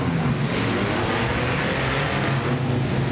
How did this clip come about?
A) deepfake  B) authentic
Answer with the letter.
B